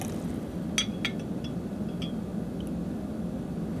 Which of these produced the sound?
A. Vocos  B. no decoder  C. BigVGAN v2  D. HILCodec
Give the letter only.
B